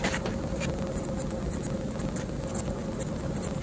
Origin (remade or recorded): recorded